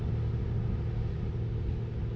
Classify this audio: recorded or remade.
recorded